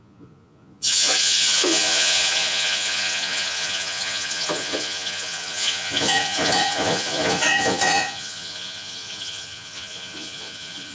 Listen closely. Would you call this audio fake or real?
fake